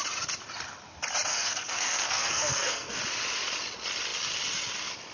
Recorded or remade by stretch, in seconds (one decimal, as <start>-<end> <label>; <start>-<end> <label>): 0.0-1.3 recorded; 1.3-3.0 remade; 3.0-5.1 recorded